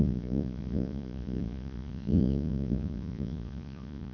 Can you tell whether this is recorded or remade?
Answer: remade